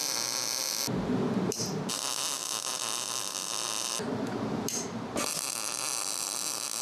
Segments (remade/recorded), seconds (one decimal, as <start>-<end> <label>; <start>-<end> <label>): 0.0-6.8 recorded